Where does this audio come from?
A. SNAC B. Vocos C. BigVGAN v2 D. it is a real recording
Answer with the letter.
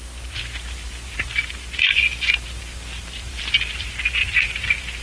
C